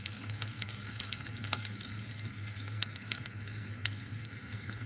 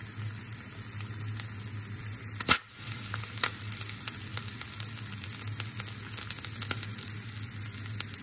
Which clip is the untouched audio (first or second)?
second